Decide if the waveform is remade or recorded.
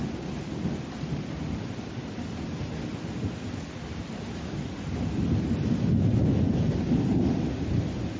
recorded